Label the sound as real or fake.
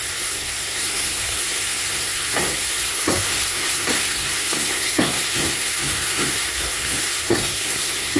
fake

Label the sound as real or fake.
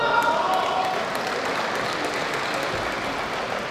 real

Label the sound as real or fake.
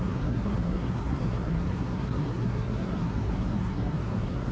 fake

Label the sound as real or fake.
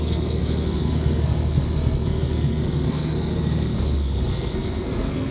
fake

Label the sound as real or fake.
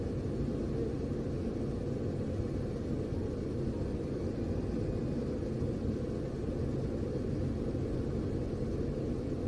real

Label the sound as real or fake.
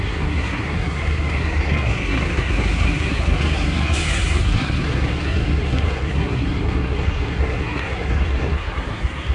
fake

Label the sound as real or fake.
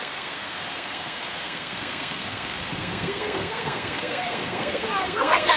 fake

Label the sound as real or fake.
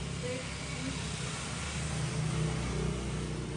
real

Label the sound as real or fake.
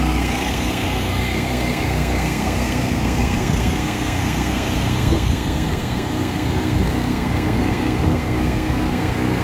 fake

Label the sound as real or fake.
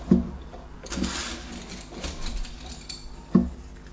real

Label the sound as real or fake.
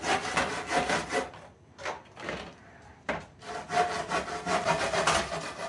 real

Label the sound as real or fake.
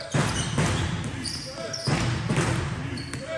real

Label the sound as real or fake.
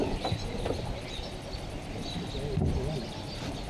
real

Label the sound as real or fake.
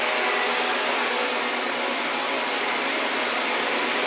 real